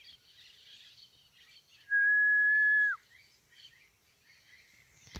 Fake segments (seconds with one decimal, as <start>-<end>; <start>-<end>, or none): none